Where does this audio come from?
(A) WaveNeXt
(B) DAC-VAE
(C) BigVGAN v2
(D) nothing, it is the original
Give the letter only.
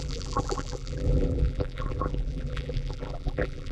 C